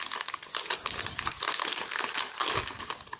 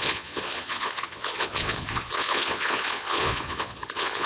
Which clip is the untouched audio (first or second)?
first